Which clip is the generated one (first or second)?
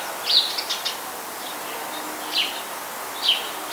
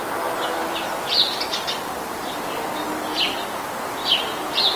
second